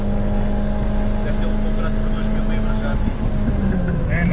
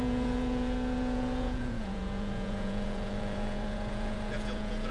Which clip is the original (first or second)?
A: first